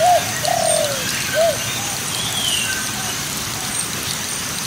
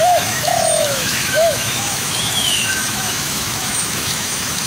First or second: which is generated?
second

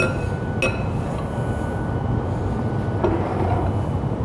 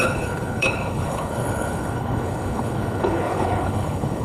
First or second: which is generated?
second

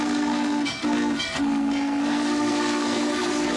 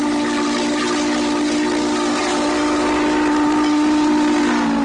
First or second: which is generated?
first